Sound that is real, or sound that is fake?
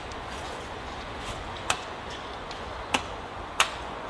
fake